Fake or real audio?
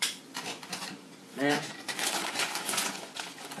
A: fake